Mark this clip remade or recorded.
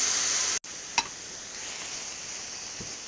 recorded